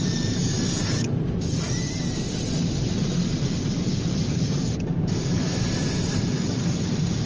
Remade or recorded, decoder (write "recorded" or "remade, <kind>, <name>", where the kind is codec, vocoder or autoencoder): recorded